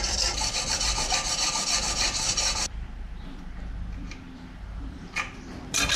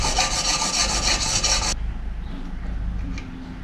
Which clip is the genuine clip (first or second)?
second